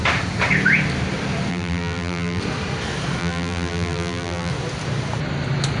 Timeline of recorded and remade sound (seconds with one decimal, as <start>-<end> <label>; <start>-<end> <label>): 0.0-1.5 recorded; 1.5-2.4 remade; 2.4-3.2 recorded; 3.2-4.5 remade; 4.5-5.8 recorded